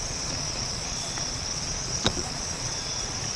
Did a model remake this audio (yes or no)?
yes